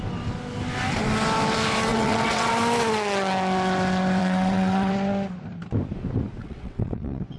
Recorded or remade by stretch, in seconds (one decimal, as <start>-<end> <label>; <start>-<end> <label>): 0.0-1.9 recorded; 1.9-2.5 remade; 2.5-4.2 recorded; 4.2-4.9 remade; 4.9-6.4 recorded; 6.4-7.4 remade